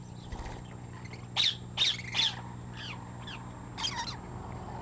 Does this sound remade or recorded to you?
recorded